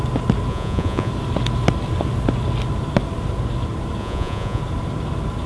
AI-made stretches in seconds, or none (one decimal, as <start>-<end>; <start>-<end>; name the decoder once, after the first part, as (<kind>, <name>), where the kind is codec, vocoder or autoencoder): 0.5-1.1 (vocoder, Vocos); 4.0-4.6